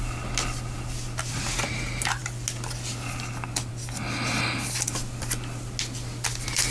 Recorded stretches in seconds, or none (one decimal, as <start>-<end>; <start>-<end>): 0.0-6.7